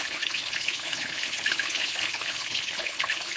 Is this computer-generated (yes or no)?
yes